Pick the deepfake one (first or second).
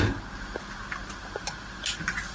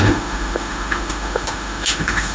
second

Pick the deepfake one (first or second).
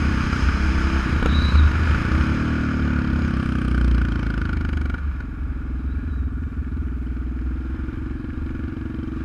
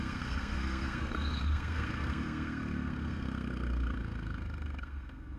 second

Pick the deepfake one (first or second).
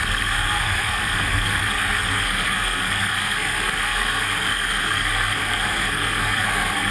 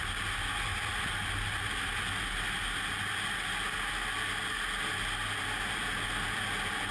first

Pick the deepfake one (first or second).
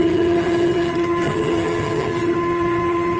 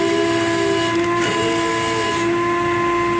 first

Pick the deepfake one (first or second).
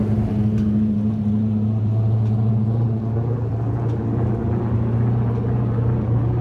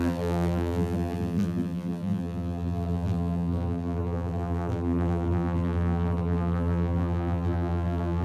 second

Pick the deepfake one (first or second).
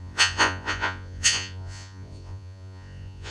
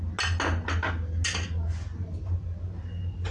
first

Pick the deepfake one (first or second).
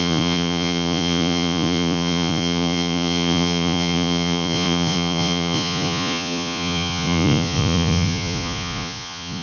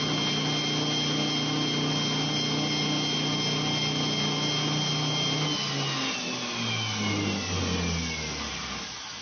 first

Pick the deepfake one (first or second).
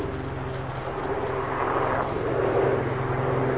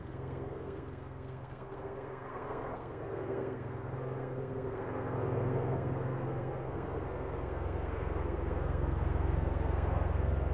second